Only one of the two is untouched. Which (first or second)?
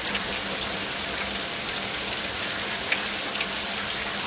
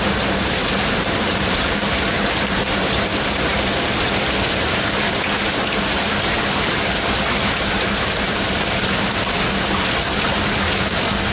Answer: first